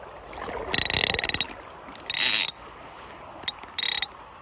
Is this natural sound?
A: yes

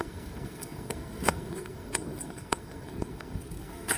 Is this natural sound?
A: no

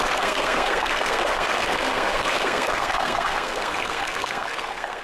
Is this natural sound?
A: no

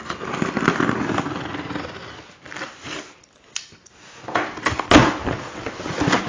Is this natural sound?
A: yes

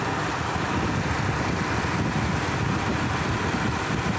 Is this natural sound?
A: yes